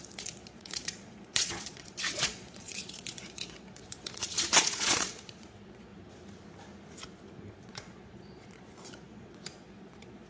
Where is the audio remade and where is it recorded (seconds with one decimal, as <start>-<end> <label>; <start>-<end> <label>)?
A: 0.0-5.9 remade; 5.9-7.5 recorded; 7.5-10.3 remade